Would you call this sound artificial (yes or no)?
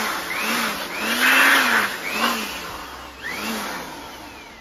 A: no